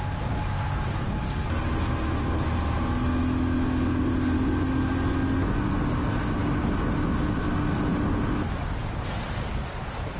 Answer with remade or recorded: recorded